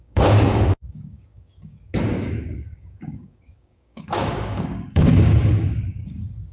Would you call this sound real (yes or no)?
no